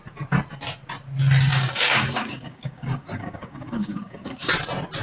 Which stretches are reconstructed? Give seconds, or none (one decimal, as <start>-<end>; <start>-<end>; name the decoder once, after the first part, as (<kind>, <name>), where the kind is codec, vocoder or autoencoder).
1.5-4.5 (codec, DAC)